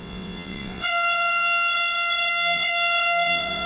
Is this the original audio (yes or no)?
no